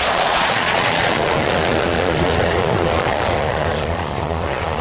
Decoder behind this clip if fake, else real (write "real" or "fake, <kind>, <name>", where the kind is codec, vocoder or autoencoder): fake, vocoder, Vocos